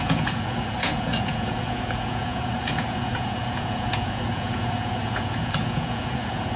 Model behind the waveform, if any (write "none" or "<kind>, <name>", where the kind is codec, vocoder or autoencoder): vocoder, Vocos